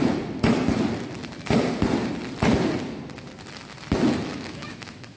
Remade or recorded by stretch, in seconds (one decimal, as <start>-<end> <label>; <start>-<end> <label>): 0.0-4.3 recorded; 4.3-5.2 remade